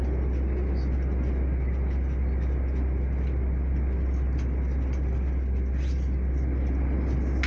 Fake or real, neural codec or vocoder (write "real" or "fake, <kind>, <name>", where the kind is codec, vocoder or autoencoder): real